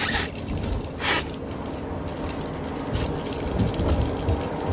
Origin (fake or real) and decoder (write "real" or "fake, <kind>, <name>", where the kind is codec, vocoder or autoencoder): real